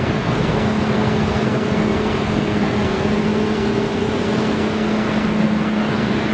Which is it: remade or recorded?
remade